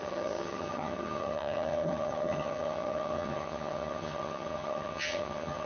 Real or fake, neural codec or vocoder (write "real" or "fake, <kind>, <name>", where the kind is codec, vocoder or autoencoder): fake, vocoder, HiFi-GAN